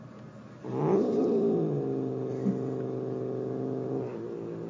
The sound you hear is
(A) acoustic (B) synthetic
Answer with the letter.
A